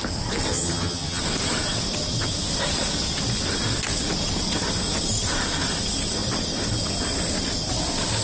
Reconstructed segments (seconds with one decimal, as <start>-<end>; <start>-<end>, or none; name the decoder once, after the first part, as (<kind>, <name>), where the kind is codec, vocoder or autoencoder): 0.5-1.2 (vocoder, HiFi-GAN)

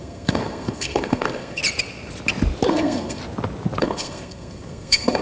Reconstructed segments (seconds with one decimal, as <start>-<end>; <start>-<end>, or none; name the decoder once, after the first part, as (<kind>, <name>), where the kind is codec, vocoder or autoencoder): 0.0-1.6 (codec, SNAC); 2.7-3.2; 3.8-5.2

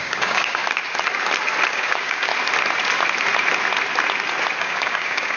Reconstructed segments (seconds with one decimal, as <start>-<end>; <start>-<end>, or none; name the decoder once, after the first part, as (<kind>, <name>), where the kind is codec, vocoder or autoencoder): 0.0-0.6 (codec, DAC); 1.7-2.3; 4.6-5.4

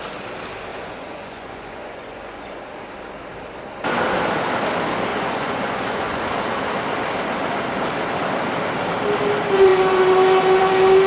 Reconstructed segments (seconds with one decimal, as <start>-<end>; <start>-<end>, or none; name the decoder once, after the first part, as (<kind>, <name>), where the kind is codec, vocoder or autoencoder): 0.7-2.6 (vocoder, Vocos); 5.1-6.2

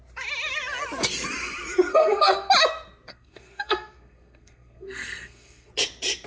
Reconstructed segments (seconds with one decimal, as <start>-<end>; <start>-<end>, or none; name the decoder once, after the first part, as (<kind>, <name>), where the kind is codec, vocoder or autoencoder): 1.9-2.5 (codec, SNAC); 3.1-5.7